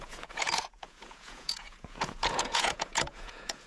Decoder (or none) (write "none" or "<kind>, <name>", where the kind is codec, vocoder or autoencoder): vocoder, Vocos